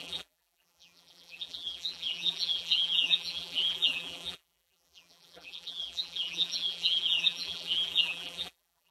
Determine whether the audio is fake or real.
fake